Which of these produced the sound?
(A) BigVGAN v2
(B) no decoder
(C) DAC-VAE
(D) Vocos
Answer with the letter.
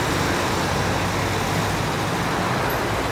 B